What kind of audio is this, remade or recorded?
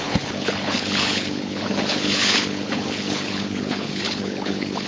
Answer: remade